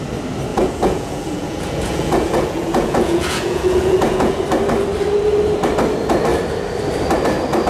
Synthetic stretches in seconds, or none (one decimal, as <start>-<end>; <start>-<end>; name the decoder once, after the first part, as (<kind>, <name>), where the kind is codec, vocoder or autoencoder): 0.5-4.4 (vocoder, Vocos)